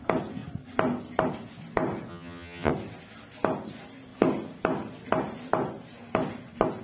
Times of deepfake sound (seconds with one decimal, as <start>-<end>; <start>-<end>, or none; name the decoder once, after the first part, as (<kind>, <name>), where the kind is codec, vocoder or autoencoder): 2.1-2.7 (vocoder, HiFi-GAN)